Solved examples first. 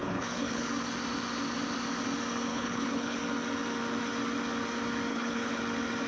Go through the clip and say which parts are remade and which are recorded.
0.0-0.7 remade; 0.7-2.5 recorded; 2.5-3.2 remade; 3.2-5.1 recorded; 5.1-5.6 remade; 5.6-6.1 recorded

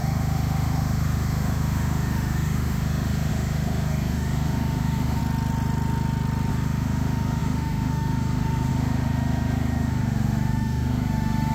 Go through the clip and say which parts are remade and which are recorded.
0.0-5.2 remade; 5.2-6.5 recorded; 6.5-11.5 remade

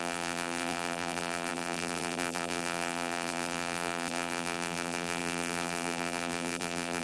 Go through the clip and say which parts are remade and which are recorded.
0.0-7.0 remade

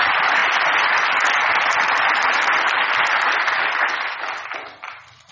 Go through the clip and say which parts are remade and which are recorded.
0.0-5.3 recorded

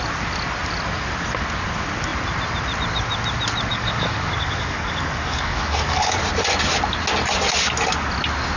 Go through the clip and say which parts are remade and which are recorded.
0.0-3.7 recorded; 3.7-6.2 remade; 6.2-8.6 recorded

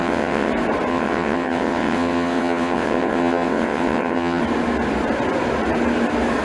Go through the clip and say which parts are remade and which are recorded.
0.0-0.5 remade; 0.5-0.9 recorded; 0.9-4.4 remade; 4.4-6.4 recorded